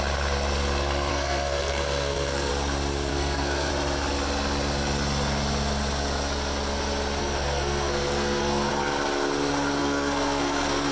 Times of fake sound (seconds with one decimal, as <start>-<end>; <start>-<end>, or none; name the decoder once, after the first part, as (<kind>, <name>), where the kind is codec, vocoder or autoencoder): 1.1-2.5 (codec, SNAC); 3.1-3.7; 7.2-8.7; 9.8-10.9